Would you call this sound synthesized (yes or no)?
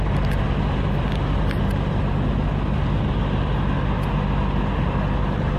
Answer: no